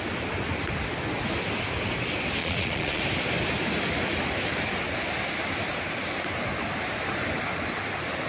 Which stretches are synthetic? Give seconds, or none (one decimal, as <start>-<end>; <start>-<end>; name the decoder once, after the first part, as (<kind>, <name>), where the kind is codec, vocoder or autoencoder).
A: 2.4-3.0 (vocoder, Vocos)